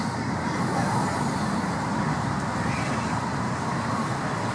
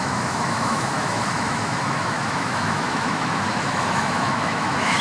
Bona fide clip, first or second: first